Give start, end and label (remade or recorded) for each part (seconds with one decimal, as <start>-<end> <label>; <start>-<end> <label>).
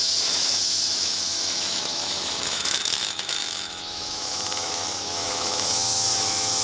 0.0-6.6 remade